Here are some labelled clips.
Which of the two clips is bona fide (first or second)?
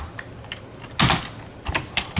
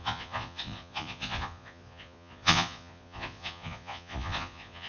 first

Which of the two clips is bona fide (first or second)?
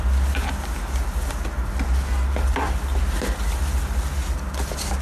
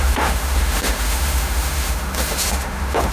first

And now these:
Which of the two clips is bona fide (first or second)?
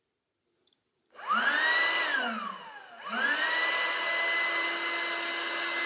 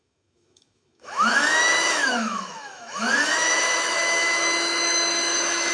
first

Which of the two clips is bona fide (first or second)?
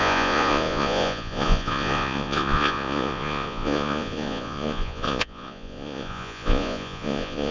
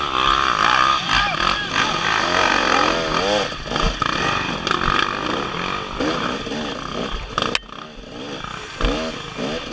second